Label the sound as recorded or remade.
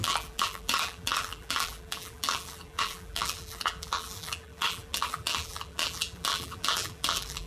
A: remade